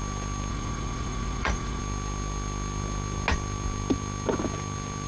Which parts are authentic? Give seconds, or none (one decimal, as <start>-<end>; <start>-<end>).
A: 0.0-0.5; 1.8-5.1